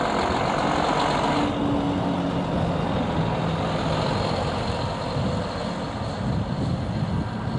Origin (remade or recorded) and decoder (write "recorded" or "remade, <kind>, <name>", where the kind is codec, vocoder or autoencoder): recorded